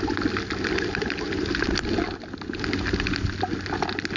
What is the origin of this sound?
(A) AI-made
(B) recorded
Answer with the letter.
B